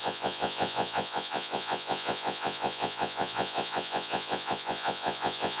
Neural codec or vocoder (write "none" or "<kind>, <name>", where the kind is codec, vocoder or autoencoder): vocoder, Vocos